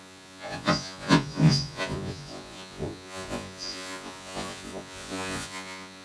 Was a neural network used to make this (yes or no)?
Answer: yes